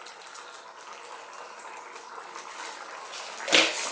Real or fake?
real